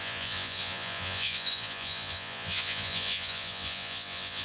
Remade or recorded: remade